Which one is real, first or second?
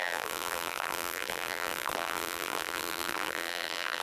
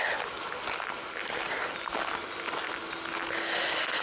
second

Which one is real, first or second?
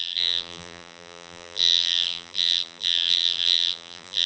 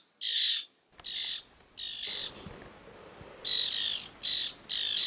second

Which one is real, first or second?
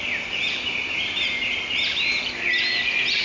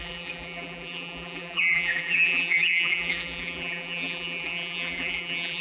first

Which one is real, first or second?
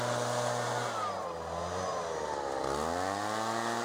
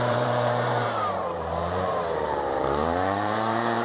first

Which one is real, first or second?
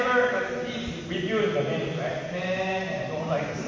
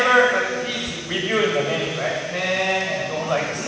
second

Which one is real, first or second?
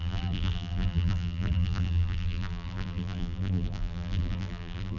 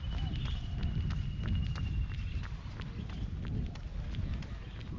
second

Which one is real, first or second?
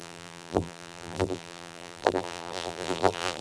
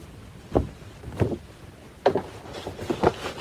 second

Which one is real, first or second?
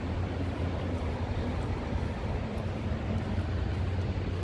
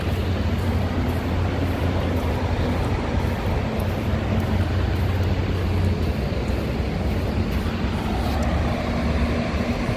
second